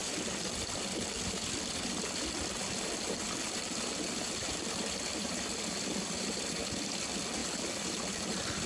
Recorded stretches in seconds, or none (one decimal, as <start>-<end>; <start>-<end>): 1.9-2.6; 6.6-7.4; 8.0-8.7